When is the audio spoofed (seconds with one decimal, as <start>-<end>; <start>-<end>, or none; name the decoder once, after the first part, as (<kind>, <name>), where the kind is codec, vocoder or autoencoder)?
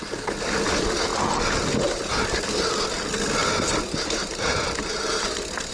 3.4-4.5 (vocoder, BigVGAN v2)